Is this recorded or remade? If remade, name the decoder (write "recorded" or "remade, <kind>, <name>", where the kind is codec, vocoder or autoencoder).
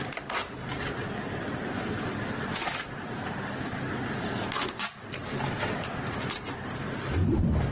remade, vocoder, BigVGAN v2